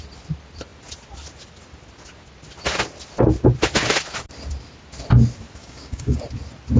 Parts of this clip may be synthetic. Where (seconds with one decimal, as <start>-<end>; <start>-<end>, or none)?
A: 5.6-6.2